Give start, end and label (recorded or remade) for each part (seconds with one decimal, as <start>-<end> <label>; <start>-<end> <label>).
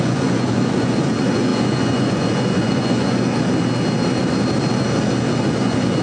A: 0.0-3.3 remade; 3.3-5.4 recorded; 5.4-6.0 remade